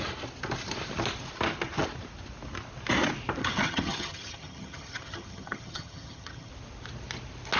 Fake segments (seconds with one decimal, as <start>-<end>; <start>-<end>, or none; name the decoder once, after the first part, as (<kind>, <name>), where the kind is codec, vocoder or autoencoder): 3.4-6.5 (vocoder, HiFi-GAN)